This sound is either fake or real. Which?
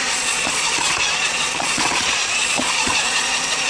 fake